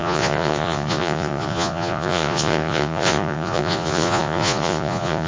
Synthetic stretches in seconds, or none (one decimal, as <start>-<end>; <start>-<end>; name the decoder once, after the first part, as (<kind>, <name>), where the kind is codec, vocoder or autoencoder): 0.0-5.3 (vocoder, Vocos)